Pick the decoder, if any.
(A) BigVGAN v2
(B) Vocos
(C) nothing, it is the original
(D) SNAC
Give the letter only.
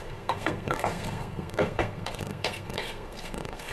D